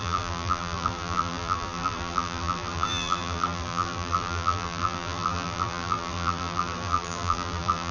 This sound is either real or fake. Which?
fake